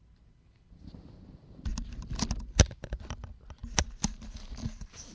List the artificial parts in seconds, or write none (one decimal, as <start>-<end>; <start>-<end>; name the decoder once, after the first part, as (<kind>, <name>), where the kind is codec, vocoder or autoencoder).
none